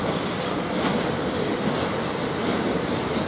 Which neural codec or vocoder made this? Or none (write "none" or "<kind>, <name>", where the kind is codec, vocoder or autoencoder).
none